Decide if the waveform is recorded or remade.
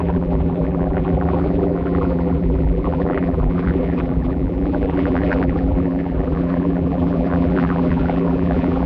remade